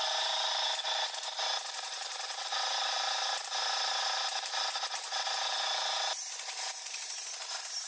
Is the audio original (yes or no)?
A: no